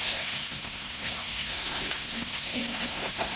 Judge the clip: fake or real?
fake